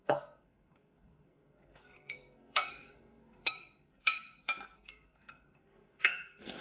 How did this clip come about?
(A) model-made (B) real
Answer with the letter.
A